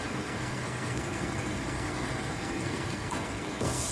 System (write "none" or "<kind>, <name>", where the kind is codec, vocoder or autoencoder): codec, SNAC